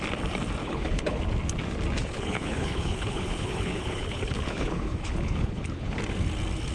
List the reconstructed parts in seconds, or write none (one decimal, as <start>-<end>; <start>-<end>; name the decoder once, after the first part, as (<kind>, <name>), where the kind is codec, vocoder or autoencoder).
0.6-1.2 (codec, HILCodec); 2.0-6.0